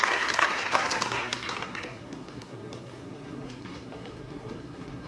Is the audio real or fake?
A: fake